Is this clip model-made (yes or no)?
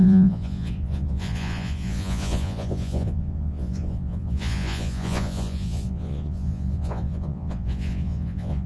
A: yes